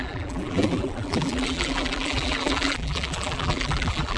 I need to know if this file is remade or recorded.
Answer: remade